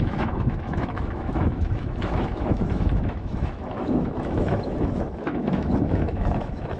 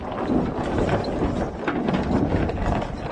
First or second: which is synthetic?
first